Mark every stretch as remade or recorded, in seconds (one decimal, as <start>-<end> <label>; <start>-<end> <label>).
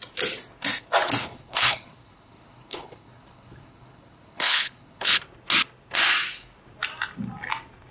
0.0-1.2 recorded; 1.2-5.2 remade; 5.2-7.9 recorded